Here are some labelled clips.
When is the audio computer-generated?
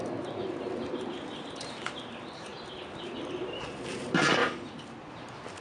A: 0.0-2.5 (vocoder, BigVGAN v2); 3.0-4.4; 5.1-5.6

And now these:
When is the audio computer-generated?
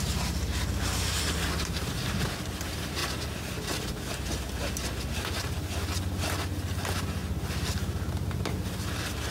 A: none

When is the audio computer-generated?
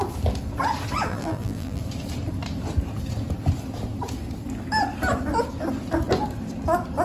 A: 1.1-1.8 (vocoder, BigVGAN v2)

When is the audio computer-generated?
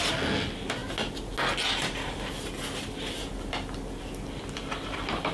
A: none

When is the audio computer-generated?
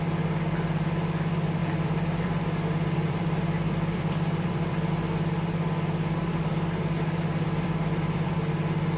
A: 1.6-4.9 (vocoder, BigVGAN v2); 6.3-8.5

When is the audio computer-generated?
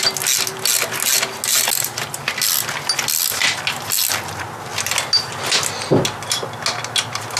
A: none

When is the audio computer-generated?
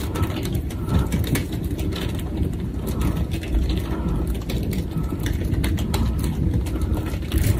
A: 0.0-1.4 (vocoder, BigVGAN v2); 2.1-2.7; 4.3-7.6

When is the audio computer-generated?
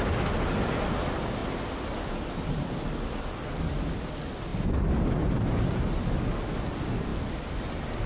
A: 7.1-8.1 (vocoder, BigVGAN v2)